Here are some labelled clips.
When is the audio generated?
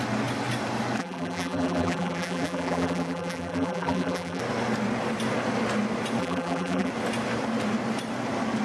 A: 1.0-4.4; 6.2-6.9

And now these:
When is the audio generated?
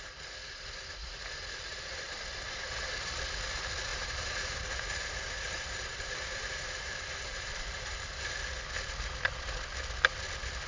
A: 1.7-3.3; 3.9-8.2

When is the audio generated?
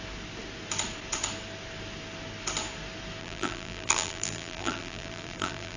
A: 3.2-5.8